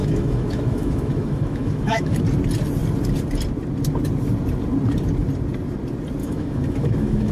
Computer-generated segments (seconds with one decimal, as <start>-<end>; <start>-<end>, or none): 0.0-2.2; 6.2-7.3